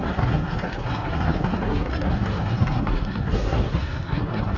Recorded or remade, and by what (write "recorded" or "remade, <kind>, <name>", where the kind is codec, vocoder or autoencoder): remade, codec, SNAC